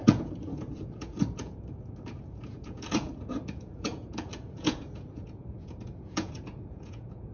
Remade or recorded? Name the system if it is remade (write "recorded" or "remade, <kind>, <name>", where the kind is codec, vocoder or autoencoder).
remade, vocoder, Vocos